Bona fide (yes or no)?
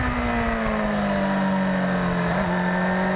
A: yes